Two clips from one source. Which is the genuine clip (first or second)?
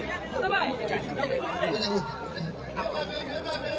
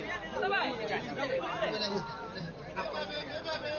second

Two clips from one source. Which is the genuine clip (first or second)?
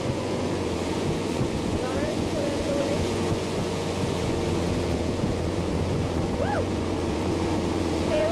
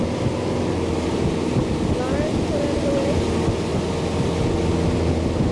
second